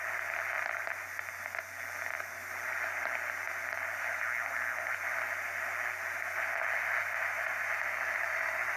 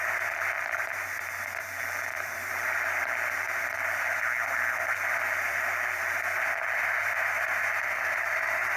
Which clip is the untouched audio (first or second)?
first